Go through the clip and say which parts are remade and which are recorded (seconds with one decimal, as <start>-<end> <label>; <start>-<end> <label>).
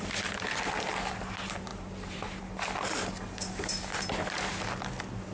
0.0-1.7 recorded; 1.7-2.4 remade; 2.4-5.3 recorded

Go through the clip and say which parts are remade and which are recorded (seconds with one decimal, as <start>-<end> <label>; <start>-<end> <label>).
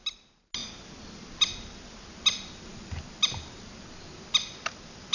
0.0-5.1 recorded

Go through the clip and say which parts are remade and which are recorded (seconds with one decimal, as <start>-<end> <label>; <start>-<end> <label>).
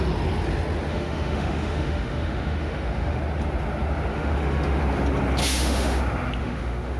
0.0-0.9 recorded; 0.9-3.2 remade; 3.2-4.1 recorded; 4.1-4.8 remade; 4.8-5.4 recorded; 5.4-6.0 remade; 6.0-6.4 recorded; 6.4-7.0 remade